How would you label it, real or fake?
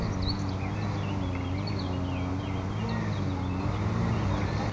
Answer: real